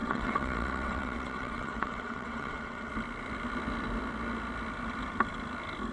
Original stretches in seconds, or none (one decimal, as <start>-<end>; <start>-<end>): 2.9-5.9